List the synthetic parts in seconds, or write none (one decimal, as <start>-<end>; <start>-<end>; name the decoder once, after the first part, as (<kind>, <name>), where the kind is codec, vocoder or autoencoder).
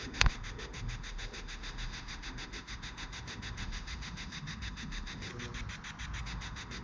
0.0-5.3 (autoencoder, DAC-VAE); 6.2-6.8